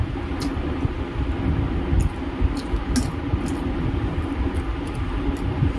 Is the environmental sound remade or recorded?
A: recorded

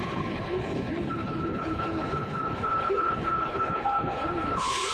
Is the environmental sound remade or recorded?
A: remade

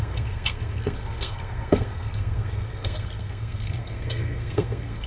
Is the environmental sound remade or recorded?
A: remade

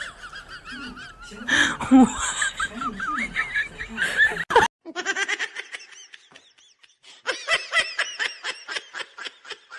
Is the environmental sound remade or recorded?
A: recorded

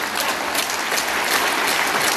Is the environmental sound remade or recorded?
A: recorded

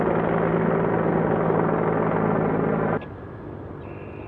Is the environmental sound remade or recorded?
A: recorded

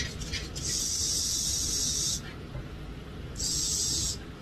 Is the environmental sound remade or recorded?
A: recorded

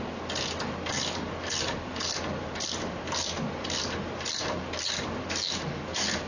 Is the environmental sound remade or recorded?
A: recorded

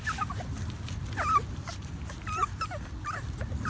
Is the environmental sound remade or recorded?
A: recorded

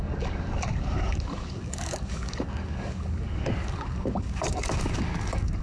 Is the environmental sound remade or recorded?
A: remade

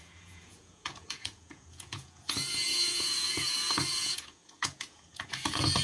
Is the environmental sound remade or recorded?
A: remade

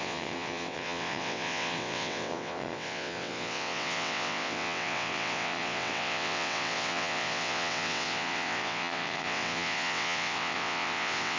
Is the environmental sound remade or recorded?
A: remade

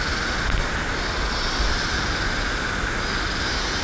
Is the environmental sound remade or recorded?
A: recorded